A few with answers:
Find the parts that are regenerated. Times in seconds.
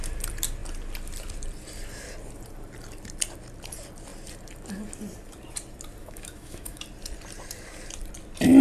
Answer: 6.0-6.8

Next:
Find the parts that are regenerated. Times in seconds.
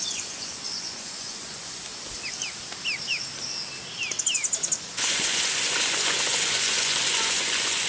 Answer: 0.0-1.9; 4.8-7.9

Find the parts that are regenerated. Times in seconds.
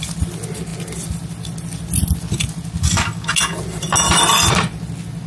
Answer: none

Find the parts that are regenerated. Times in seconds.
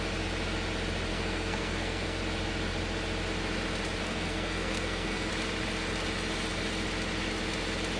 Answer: 1.1-2.2; 4.0-5.3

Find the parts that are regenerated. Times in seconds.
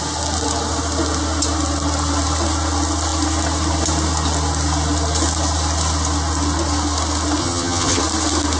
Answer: 7.4-8.0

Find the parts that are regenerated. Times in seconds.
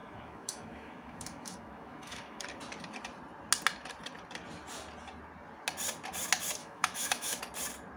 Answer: 0.0-2.4; 6.6-7.4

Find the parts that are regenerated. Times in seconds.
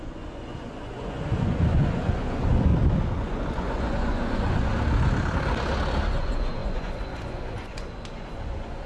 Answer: 0.0-2.7; 3.2-4.7; 6.1-8.9